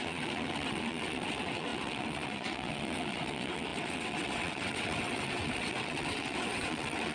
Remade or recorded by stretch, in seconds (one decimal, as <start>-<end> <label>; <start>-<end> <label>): 0.0-7.1 remade